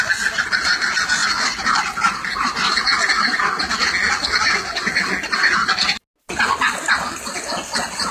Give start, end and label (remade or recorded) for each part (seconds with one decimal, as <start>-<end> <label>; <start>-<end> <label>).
0.0-8.1 recorded